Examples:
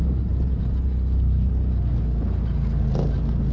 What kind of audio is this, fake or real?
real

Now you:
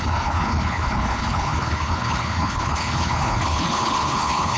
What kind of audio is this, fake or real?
fake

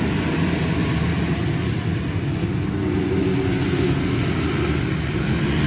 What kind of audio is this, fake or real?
real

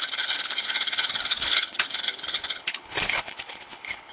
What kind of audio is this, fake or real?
fake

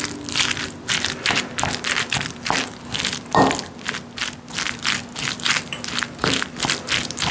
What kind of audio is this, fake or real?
real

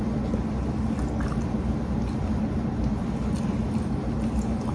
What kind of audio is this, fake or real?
real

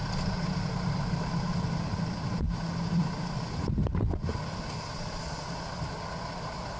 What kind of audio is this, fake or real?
real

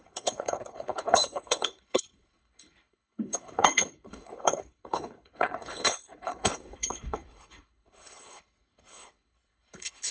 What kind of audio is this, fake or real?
fake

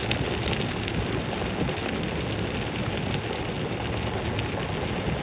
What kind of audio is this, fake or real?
real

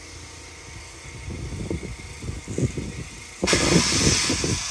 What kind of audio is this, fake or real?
real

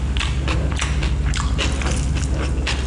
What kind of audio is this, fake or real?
real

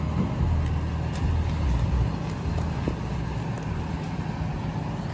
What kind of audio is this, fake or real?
real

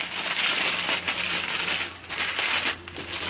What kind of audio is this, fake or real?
real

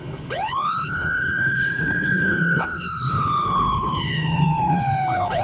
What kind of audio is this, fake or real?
fake